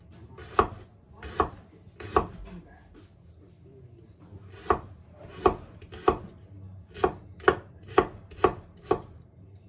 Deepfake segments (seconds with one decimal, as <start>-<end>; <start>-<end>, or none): none